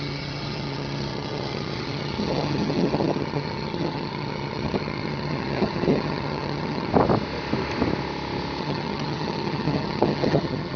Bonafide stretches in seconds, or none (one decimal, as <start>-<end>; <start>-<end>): 6.9-8.6